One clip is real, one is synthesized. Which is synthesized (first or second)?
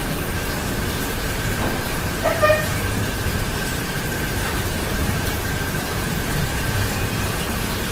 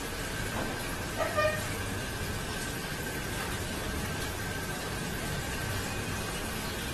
first